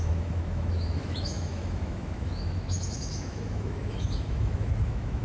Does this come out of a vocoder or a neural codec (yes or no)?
yes